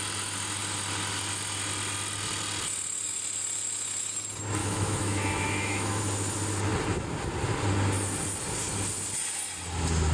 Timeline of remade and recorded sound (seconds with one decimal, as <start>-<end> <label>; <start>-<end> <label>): 0.0-4.6 recorded; 4.6-6.0 remade; 6.0-10.1 recorded